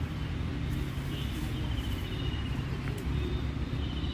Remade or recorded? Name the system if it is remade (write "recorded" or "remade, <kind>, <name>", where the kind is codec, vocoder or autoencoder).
recorded